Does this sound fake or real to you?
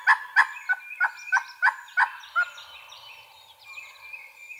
real